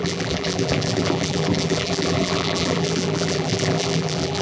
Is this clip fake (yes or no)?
yes